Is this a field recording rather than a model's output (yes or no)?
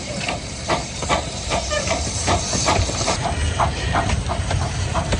no